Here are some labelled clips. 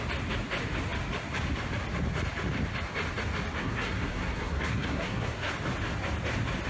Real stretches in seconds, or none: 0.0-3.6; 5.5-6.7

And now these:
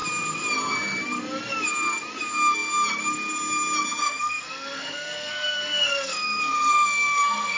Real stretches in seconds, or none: 0.0-4.0

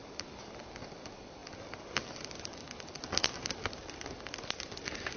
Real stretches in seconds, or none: 0.0-5.2

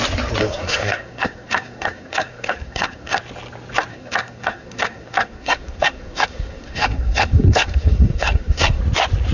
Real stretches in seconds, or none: 0.0-0.4; 3.2-3.9; 8.8-9.3

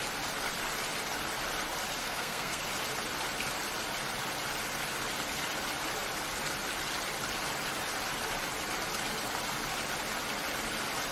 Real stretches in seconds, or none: 0.0-2.0; 2.6-11.1

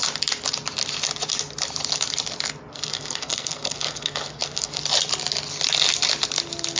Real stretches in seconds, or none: 0.0-2.7; 4.8-6.8

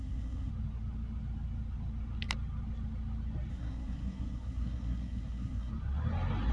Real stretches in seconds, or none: 0.5-3.5; 5.7-6.5